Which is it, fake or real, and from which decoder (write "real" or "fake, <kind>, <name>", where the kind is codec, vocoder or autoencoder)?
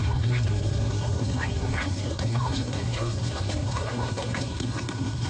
fake, codec, SNAC